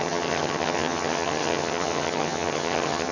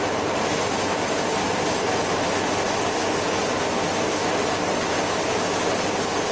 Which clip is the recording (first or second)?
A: second